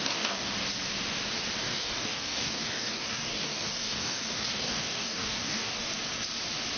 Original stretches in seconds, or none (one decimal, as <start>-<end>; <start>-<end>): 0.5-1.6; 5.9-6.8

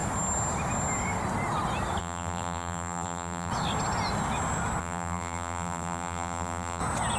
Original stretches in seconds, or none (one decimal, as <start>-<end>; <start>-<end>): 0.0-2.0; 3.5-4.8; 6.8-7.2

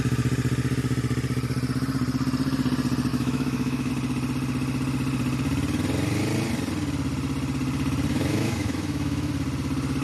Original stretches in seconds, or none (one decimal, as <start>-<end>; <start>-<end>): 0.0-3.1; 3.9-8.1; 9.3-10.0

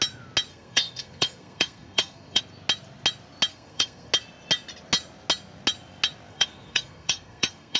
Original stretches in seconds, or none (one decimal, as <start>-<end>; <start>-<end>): 0.0-0.5; 2.4-3.5; 4.1-6.3